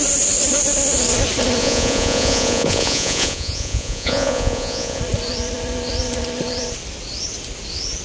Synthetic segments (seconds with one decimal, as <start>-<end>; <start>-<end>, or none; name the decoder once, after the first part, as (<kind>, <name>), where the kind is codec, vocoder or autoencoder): 1.6-5.0 (vocoder, Vocos)